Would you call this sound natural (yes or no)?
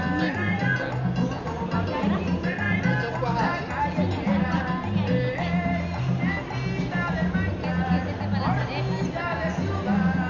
yes